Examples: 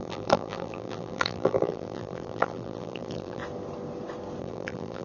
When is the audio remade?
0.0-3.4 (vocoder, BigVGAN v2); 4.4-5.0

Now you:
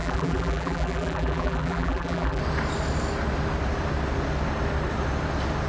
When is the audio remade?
0.0-2.4 (vocoder, BigVGAN v2)

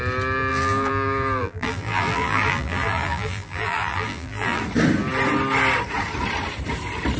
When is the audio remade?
0.5-4.6 (vocoder, BigVGAN v2)

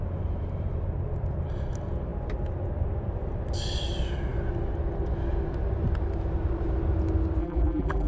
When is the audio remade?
7.4-8.1 (vocoder, BigVGAN v2)

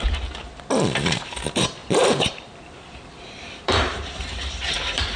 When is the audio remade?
1.8-5.2 (vocoder, BigVGAN v2)

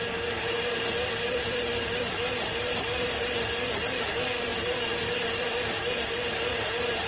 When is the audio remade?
0.0-7.1 (vocoder, BigVGAN v2)

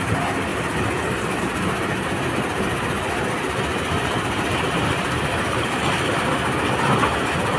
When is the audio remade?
3.7-4.6 (vocoder, BigVGAN v2)